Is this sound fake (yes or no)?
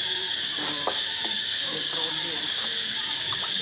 yes